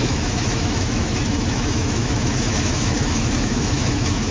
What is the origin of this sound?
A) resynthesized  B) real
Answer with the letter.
A